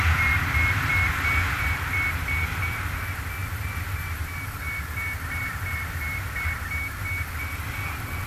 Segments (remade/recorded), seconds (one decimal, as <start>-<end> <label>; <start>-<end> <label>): 0.0-8.3 recorded